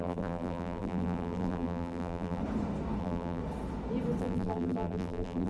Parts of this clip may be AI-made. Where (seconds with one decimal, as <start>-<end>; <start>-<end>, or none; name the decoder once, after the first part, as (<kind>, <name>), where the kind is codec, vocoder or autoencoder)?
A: 0.0-2.4 (vocoder, BigVGAN v2); 3.0-3.4; 4.2-5.5